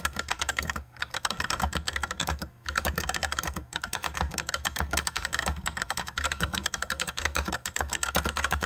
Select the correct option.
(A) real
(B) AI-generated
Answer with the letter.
B